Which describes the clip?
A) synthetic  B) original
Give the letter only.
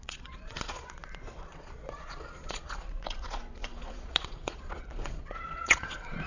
A